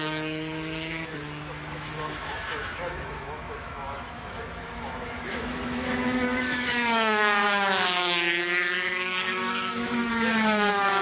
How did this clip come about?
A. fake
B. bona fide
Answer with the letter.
A